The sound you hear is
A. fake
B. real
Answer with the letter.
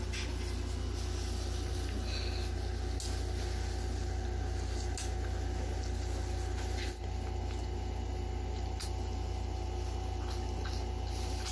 B